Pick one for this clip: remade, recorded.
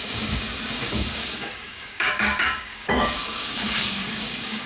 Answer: remade